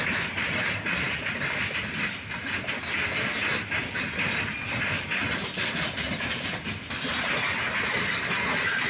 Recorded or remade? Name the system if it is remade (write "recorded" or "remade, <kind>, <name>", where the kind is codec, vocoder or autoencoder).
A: recorded